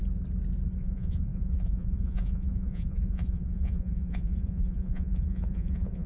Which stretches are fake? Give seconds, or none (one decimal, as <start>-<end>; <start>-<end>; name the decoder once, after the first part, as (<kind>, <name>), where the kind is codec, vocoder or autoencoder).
0.8-6.1 (vocoder, Vocos)